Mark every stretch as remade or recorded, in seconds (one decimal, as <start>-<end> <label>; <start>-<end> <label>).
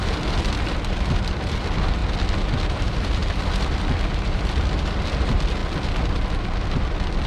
0.0-2.0 remade; 2.0-2.7 recorded; 2.7-5.6 remade; 5.6-7.3 recorded